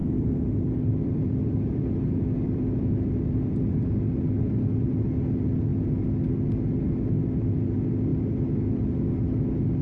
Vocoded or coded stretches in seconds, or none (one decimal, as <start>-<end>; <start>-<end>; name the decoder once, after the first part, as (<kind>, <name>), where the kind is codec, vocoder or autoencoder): 0.0-4.0 (vocoder, BigVGAN v2)